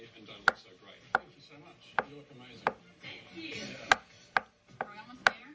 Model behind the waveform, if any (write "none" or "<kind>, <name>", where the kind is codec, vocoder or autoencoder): none